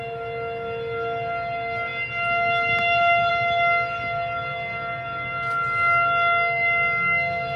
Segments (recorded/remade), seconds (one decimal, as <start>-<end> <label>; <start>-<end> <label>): 0.0-7.6 recorded